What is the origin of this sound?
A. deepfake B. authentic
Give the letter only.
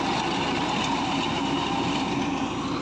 B